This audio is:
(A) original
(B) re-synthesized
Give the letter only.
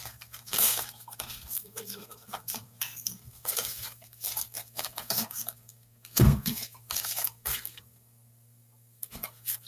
B